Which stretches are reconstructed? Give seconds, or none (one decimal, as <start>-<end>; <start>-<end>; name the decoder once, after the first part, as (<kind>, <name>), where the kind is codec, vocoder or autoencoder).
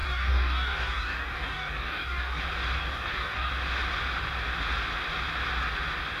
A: 0.0-2.4 (codec, DAC); 2.8-3.5